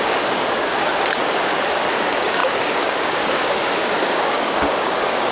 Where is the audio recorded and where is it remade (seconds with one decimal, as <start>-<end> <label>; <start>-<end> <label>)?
0.0-0.9 remade; 0.9-1.9 recorded; 1.9-5.3 remade